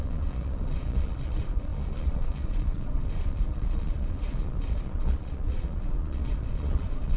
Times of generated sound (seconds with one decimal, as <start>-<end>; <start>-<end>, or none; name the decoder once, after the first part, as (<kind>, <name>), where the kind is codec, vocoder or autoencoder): 0.0-7.2 (vocoder, Vocos)